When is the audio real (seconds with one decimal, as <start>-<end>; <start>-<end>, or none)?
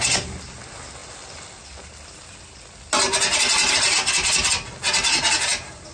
0.0-5.9